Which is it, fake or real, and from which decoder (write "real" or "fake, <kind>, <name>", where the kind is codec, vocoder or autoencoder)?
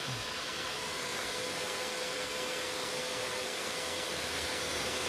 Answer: fake, codec, SNAC